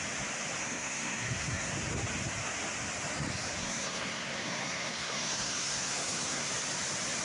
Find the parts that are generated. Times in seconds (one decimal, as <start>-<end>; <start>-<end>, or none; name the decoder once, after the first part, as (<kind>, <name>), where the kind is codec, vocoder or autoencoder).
0.6-1.7 (codec, SNAC); 3.6-6.5